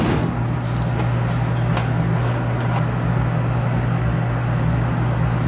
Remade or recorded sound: recorded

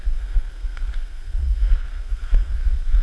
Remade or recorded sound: remade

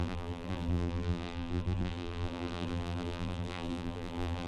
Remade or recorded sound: remade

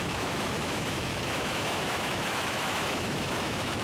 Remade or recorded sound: remade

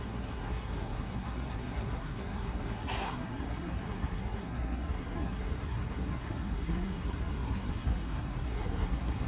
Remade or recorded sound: remade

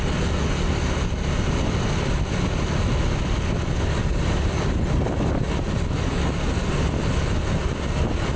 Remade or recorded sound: recorded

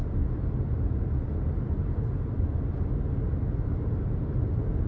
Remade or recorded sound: recorded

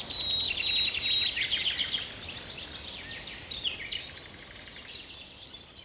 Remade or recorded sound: recorded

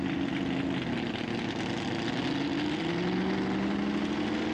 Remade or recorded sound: recorded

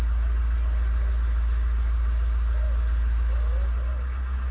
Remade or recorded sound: recorded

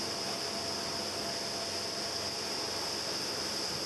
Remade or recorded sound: recorded